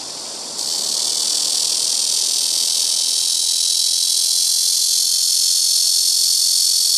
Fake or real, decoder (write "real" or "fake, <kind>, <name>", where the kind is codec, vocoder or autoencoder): real